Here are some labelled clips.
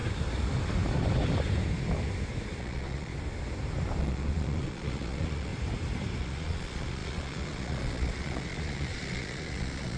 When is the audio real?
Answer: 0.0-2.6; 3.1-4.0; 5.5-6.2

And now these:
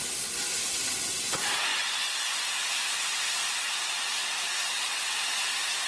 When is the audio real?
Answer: 0.0-1.7; 2.6-5.9

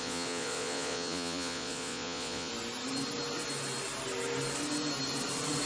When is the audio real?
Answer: 2.5-5.7

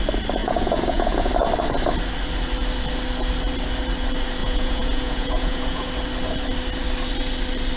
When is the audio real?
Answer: 0.0-0.4; 1.3-4.4; 5.9-7.8